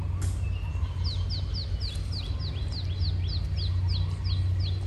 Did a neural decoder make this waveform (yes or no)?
no